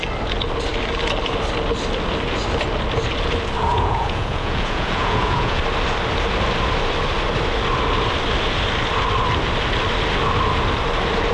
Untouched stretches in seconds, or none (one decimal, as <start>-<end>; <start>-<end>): 0.0-3.7; 5.6-11.3